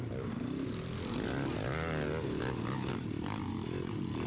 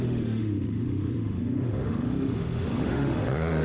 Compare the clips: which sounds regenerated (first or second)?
second